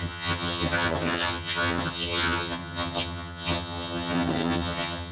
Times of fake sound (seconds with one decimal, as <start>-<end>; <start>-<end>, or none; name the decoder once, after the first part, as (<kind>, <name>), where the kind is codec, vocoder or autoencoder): 0.0-5.1 (vocoder, HiFi-GAN)